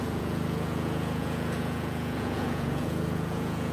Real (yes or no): no